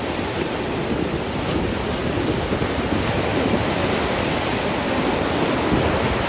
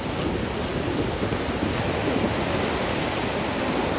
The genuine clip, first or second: second